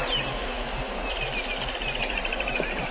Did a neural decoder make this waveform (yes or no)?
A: no